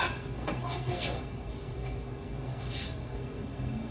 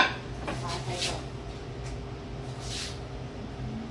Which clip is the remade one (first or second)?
first